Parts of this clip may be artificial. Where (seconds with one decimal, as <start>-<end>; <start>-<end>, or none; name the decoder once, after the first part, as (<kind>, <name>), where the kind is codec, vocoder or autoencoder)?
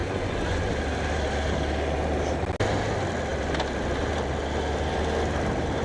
0.0-0.7 (vocoder, Vocos)